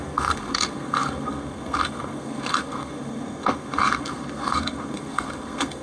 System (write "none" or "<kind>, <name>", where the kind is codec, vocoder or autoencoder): codec, SNAC